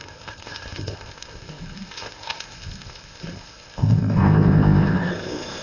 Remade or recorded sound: remade